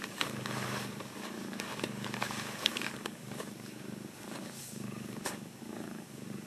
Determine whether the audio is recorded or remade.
remade